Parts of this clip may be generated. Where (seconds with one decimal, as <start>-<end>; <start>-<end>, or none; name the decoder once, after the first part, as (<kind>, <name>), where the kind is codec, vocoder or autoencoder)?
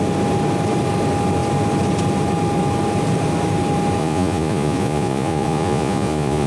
4.0-6.5 (vocoder, Vocos)